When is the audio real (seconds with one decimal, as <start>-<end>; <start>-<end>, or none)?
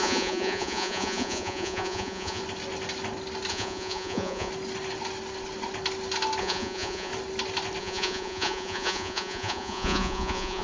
2.4-3.5; 4.5-6.4; 7.1-7.8